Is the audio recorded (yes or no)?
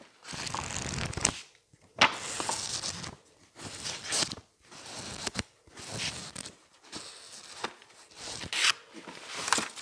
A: yes